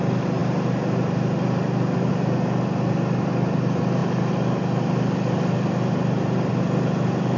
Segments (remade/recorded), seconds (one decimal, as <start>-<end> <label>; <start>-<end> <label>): 0.0-7.4 recorded